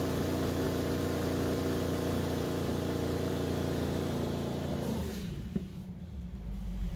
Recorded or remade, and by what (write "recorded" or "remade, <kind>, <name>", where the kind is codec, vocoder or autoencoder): remade, vocoder, BigVGAN v2